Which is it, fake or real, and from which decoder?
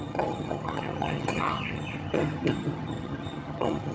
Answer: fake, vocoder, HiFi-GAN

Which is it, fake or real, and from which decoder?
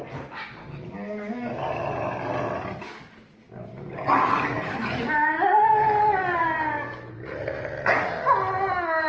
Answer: real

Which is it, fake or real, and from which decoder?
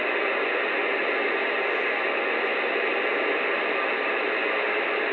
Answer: real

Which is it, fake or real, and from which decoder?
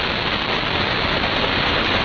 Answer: real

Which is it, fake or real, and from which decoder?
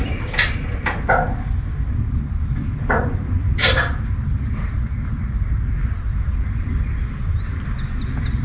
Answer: real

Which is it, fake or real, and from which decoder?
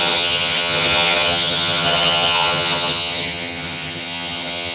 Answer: fake, vocoder, HiFi-GAN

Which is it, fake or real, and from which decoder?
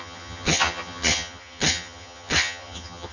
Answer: fake, vocoder, HiFi-GAN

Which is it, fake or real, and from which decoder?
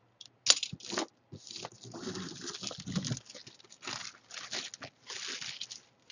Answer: real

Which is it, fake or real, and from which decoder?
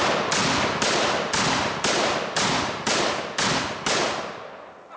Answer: real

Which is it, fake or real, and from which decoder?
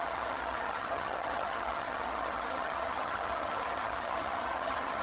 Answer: fake, vocoder, HiFi-GAN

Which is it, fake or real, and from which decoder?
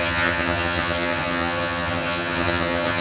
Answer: fake, vocoder, HiFi-GAN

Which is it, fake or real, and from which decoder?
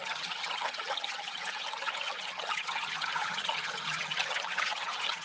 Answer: fake, vocoder, HiFi-GAN